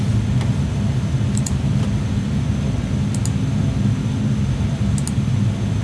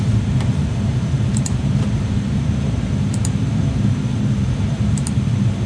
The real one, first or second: first